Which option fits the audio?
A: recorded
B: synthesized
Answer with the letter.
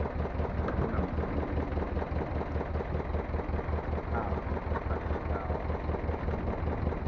A